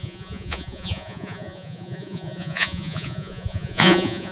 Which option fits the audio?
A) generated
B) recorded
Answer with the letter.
A